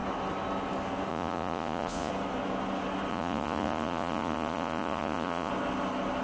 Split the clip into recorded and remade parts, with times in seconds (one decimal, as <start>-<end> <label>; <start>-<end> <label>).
0.0-1.1 recorded; 1.1-2.1 remade; 2.1-3.1 recorded; 3.1-5.5 remade; 5.5-6.2 recorded